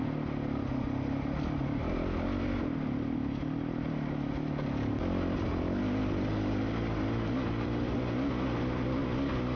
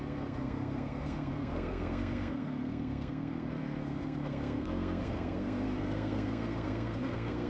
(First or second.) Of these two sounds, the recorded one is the first